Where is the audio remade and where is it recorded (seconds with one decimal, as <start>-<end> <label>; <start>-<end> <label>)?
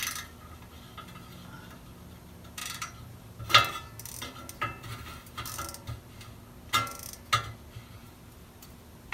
0.0-2.6 recorded; 2.6-3.4 remade; 3.4-8.0 recorded; 8.0-9.1 remade